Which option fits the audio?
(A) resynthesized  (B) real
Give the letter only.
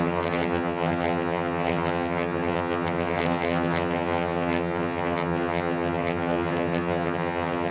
A